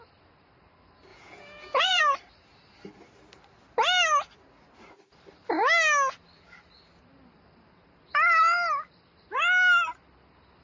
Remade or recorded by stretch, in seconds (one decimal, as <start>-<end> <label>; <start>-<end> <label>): 0.0-1.1 recorded; 1.1-2.0 remade; 2.0-10.6 recorded